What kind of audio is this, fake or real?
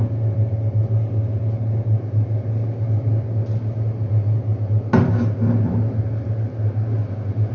real